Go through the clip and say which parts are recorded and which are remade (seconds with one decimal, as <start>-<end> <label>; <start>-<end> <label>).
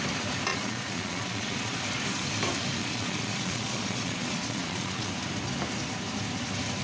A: 0.0-0.5 recorded; 0.5-1.8 remade; 1.8-2.8 recorded; 2.8-5.1 remade; 5.1-6.8 recorded